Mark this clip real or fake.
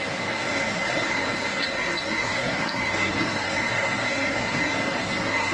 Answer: fake